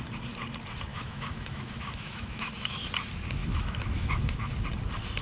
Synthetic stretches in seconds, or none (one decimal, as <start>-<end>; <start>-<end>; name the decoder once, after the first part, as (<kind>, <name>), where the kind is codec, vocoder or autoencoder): 0.9-2.9 (autoencoder, DAC-VAE); 3.4-4.5